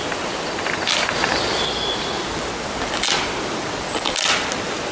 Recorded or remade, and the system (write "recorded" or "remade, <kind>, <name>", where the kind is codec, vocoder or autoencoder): recorded